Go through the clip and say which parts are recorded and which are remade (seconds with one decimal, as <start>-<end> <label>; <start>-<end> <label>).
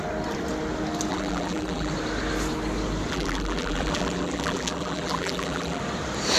0.0-1.1 recorded; 1.1-1.9 remade; 1.9-3.1 recorded; 3.1-5.8 remade; 5.8-6.4 recorded